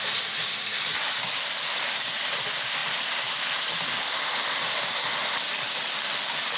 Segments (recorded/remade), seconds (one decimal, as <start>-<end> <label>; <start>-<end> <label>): 0.0-6.6 recorded